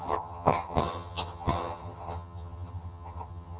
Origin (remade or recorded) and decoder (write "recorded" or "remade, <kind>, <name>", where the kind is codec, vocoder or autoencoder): remade, vocoder, HiFi-GAN